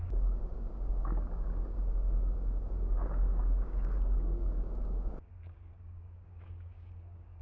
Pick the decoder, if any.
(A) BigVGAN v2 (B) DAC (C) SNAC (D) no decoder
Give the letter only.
B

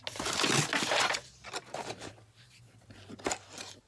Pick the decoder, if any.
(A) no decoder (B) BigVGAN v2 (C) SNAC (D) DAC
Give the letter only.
A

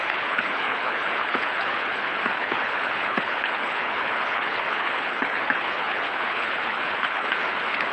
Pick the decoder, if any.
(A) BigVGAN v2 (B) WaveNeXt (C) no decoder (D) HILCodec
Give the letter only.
D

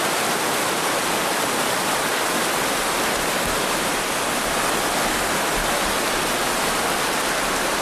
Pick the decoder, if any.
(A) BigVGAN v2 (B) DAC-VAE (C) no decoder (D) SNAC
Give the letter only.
C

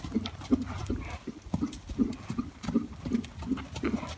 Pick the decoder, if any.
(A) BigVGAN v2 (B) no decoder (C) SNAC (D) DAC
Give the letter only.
B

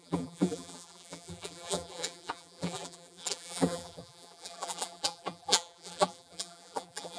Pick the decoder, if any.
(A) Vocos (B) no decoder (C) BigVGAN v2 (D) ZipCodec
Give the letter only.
C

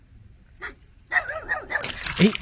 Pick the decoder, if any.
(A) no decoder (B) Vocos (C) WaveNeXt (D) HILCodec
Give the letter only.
A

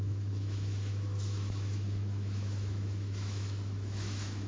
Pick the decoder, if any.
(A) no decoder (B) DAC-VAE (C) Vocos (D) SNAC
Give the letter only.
B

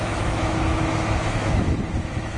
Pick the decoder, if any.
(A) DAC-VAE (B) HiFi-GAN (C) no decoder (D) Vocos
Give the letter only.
A